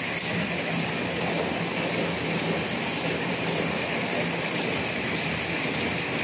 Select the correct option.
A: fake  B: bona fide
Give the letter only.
B